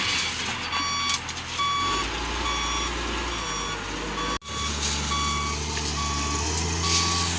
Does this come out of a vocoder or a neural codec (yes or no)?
no